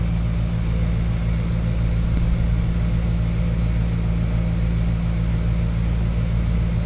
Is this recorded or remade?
recorded